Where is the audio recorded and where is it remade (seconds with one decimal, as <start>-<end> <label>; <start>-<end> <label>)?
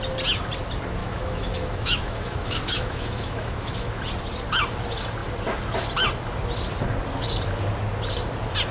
0.0-1.0 recorded; 1.0-3.9 remade; 3.9-8.7 recorded